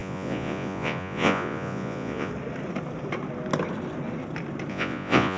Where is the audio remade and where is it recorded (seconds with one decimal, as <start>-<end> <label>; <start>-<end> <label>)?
0.0-2.3 remade; 2.3-4.7 recorded; 4.7-5.4 remade

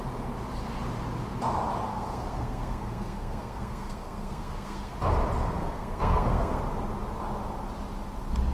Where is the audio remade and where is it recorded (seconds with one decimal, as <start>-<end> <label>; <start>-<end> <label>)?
0.0-1.9 recorded; 1.9-4.9 remade; 4.9-5.6 recorded; 5.6-6.6 remade; 6.6-8.5 recorded

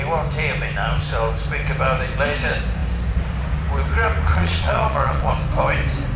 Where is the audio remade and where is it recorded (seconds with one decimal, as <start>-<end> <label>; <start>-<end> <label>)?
0.0-4.3 recorded; 4.3-5.3 remade; 5.3-6.2 recorded

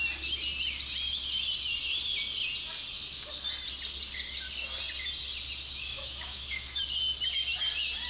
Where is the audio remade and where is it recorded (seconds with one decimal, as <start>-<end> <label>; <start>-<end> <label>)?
0.0-5.9 recorded; 5.9-6.8 remade; 6.8-8.1 recorded

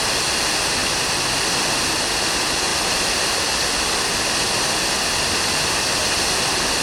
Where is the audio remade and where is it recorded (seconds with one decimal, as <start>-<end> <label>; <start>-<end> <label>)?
0.0-2.7 recorded; 2.7-5.9 remade; 5.9-6.8 recorded

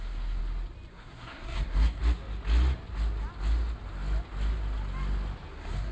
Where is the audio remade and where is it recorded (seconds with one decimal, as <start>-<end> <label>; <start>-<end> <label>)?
0.0-0.4 remade; 0.4-0.9 recorded; 0.9-2.0 remade; 2.0-5.5 recorded; 5.5-5.9 remade

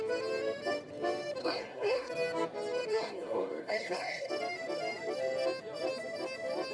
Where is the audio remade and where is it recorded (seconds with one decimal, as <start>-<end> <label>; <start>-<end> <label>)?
0.0-1.4 recorded; 1.4-2.1 remade; 2.1-2.9 recorded; 2.9-4.3 remade; 4.3-6.7 recorded